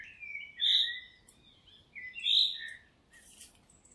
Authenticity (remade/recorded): recorded